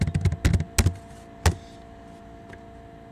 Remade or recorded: recorded